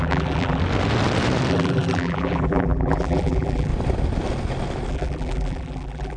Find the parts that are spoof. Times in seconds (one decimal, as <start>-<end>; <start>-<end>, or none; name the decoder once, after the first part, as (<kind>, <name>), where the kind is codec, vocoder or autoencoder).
0.0-0.6 (vocoder, BigVGAN v2); 1.5-3.7; 4.9-6.2

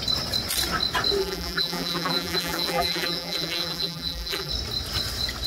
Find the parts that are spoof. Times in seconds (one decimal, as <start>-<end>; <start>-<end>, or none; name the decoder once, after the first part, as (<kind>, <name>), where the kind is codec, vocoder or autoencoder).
1.2-4.5 (vocoder, BigVGAN v2)